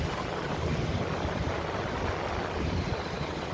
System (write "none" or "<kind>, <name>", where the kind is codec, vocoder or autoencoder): none